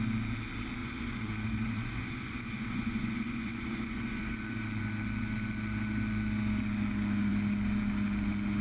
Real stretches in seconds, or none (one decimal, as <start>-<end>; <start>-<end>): 0.0-0.8; 4.8-8.6